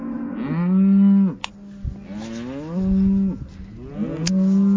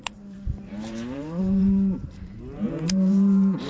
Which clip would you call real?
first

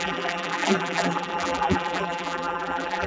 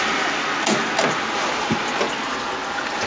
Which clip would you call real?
second